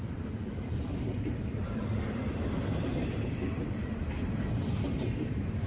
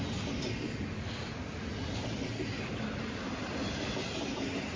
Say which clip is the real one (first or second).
second